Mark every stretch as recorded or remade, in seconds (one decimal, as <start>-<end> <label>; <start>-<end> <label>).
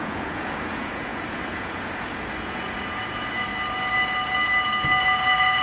0.0-3.5 remade; 3.5-5.0 recorded; 5.0-5.6 remade